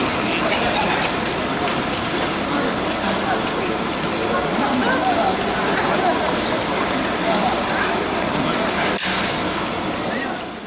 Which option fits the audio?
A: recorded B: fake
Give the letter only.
A